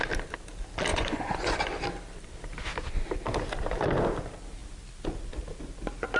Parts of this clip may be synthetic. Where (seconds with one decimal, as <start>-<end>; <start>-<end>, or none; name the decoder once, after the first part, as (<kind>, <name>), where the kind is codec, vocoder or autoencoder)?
0.9-1.6 (vocoder, Vocos)